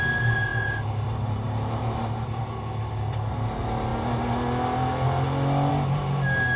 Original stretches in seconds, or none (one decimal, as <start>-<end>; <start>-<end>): 0.0-6.6